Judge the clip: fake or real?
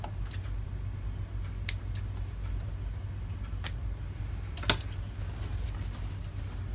real